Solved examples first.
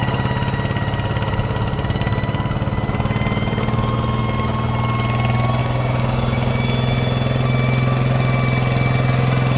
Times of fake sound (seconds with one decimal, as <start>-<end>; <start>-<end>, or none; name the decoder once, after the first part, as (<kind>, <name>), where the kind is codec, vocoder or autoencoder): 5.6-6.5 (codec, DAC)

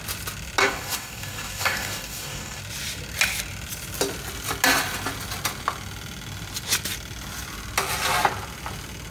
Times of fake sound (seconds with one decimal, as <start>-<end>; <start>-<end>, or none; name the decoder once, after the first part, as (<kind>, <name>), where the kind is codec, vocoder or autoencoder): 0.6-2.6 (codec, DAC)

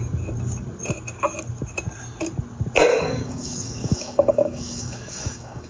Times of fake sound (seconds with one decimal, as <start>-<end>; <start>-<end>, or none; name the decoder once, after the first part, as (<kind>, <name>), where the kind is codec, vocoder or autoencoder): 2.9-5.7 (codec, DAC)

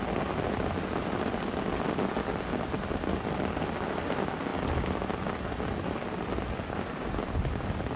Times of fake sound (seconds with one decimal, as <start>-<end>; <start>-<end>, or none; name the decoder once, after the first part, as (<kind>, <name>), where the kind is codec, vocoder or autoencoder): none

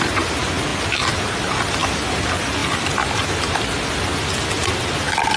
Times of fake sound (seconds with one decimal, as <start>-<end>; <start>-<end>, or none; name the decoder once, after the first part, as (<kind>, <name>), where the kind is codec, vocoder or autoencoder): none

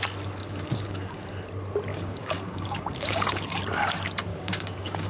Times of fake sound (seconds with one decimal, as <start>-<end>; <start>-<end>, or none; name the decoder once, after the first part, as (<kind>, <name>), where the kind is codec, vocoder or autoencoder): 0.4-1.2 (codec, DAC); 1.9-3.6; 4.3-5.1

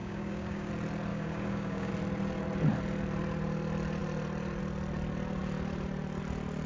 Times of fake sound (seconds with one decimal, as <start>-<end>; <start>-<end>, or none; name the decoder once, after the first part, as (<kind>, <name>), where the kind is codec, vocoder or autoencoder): 0.0-0.7 (codec, DAC); 1.1-1.9

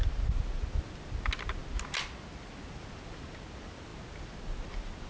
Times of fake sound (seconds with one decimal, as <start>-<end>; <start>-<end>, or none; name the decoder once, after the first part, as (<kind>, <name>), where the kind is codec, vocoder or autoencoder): none